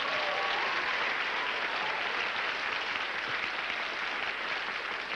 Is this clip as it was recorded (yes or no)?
yes